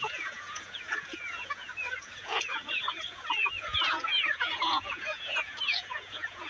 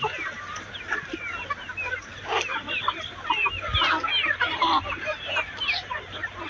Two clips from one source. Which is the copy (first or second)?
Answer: first